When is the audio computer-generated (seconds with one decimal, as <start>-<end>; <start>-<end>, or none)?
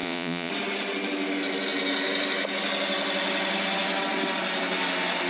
0.0-0.5